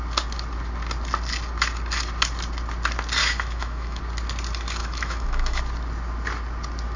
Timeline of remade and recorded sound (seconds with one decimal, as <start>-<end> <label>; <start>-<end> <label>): 0.0-3.2 recorded; 3.2-4.0 remade; 4.0-4.8 recorded; 4.8-5.6 remade; 5.6-7.0 recorded